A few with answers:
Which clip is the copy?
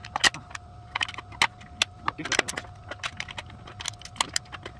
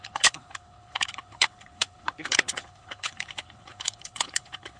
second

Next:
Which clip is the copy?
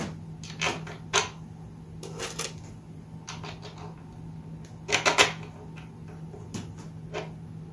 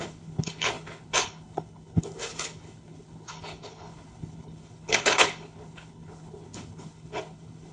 second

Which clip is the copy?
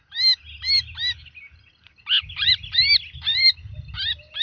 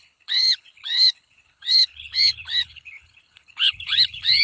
second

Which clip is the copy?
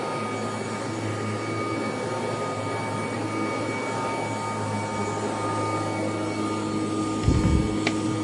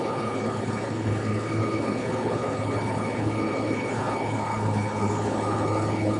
second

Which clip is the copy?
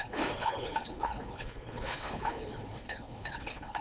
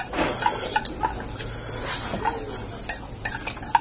first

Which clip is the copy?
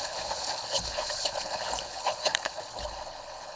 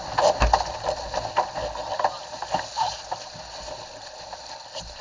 first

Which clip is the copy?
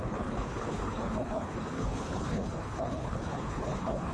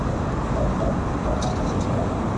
first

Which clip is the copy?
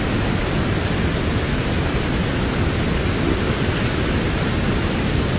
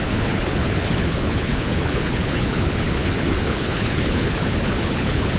second